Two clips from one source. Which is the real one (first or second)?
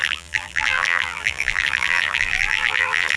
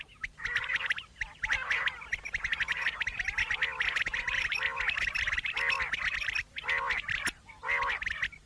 second